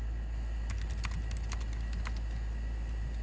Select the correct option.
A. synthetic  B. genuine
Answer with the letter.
B